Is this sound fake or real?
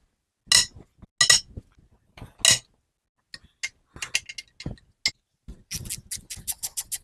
real